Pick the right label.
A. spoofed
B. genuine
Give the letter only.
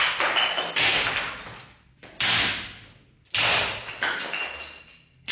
B